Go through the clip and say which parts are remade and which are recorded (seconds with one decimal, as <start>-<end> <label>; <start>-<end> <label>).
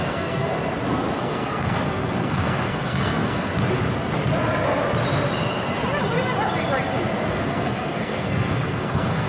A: 0.0-0.5 remade; 0.5-1.2 recorded; 1.2-3.5 remade; 3.5-7.3 recorded; 7.3-9.3 remade